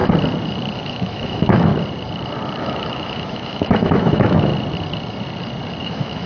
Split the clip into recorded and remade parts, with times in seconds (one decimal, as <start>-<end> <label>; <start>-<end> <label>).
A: 0.0-0.8 recorded; 0.8-1.7 remade; 1.7-2.6 recorded; 2.6-4.5 remade; 4.5-5.8 recorded; 5.8-6.3 remade